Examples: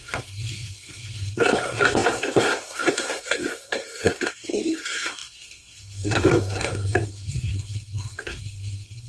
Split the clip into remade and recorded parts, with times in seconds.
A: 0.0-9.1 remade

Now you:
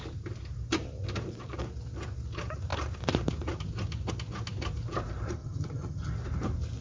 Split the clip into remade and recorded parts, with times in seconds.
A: 0.0-5.4 recorded; 5.4-6.1 remade; 6.1-6.8 recorded

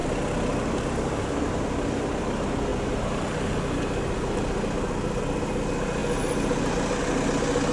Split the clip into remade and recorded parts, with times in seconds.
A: 0.0-7.7 recorded